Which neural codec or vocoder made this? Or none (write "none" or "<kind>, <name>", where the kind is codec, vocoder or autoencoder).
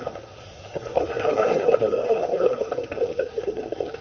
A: codec, SNAC